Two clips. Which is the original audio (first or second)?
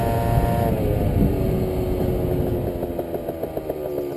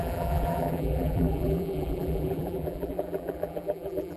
first